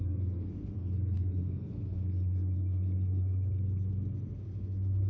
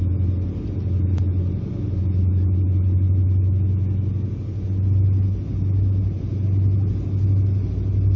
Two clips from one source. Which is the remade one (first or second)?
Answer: first